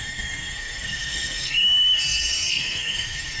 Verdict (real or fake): fake